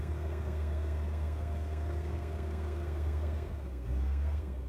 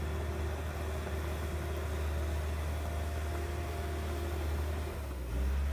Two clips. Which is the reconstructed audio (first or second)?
first